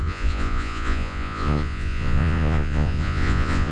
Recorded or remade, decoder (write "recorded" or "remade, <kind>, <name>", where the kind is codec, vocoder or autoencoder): remade, vocoder, Vocos